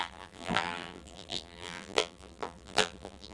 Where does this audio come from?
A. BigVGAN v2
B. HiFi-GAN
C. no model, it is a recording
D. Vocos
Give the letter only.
A